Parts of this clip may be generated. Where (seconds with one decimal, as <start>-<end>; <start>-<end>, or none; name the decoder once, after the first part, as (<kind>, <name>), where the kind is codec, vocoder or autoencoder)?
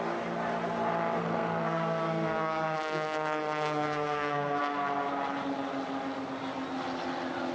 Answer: 1.2-4.6 (codec, SNAC)